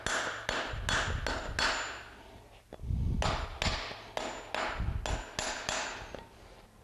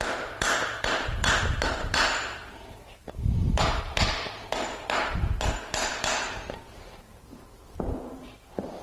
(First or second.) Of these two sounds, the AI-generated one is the second